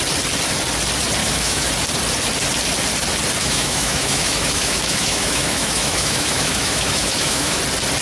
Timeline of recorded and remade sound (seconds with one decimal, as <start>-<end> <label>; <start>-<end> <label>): 0.0-1.2 recorded; 1.2-1.7 remade; 1.7-3.4 recorded; 3.4-7.6 remade; 7.6-8.0 recorded